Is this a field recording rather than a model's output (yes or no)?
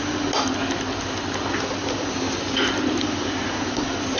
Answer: yes